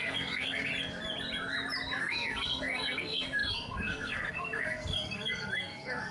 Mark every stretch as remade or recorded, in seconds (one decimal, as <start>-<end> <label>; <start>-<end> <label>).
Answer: 0.0-0.7 remade; 0.7-2.0 recorded; 2.0-6.1 remade